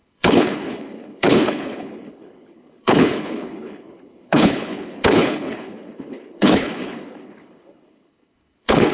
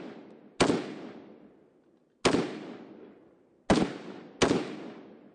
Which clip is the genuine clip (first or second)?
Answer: second